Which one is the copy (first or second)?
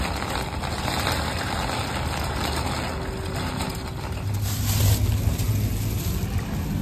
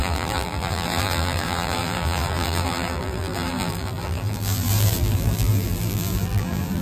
second